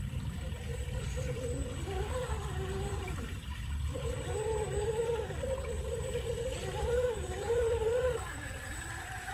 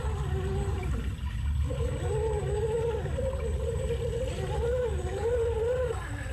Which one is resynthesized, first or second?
first